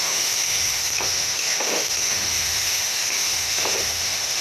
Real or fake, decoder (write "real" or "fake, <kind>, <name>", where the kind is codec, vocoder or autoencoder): fake, autoencoder, DAC-VAE